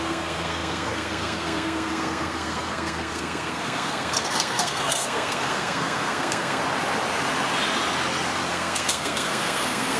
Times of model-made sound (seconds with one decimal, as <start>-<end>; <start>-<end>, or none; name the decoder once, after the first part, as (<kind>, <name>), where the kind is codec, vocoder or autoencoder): 0.0-6.6 (codec, SNAC); 8.5-10.0